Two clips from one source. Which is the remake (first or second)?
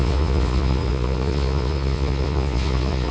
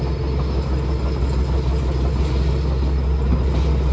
first